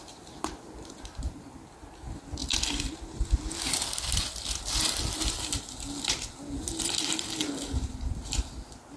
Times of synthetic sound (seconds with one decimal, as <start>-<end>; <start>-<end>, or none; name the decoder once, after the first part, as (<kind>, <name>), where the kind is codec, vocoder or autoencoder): none